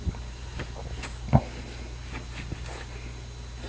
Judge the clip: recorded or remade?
recorded